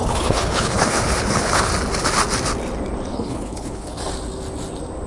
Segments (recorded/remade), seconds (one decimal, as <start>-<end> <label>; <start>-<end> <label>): 0.0-1.7 remade; 1.7-3.1 recorded; 3.1-4.0 remade; 4.0-5.1 recorded